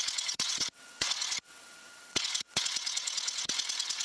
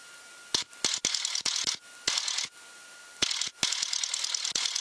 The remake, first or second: first